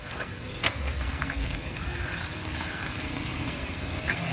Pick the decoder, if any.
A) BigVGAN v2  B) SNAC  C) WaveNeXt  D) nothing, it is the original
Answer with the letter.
B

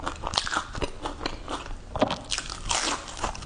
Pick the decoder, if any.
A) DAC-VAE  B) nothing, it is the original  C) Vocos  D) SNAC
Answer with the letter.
B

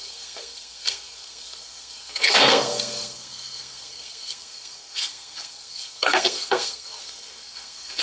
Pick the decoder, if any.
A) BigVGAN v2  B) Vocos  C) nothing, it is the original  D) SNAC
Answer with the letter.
D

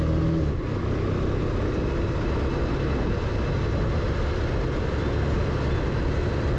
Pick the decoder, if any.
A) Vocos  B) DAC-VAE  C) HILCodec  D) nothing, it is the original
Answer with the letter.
D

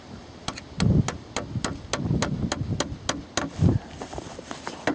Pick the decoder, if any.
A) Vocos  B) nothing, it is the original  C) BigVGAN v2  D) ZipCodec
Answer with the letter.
B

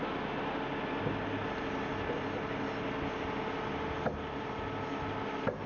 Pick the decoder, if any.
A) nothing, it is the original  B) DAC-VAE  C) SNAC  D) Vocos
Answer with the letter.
A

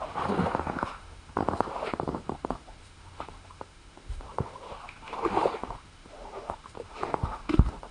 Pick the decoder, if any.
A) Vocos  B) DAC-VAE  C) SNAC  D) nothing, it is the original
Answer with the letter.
B